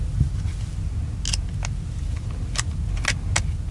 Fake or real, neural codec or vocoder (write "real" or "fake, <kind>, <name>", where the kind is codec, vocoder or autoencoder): real